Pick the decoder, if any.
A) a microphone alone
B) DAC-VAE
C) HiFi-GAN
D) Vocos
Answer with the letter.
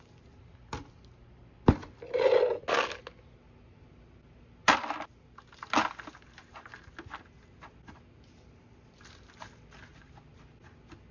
A